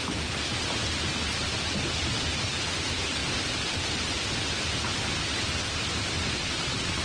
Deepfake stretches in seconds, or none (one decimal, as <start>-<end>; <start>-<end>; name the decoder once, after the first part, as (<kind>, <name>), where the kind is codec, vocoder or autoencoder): 6.4-7.0 (vocoder, Vocos)